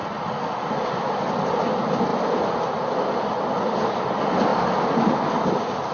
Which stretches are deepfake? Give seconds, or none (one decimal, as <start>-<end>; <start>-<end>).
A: none